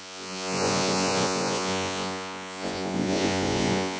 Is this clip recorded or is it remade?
remade